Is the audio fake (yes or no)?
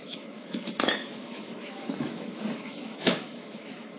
yes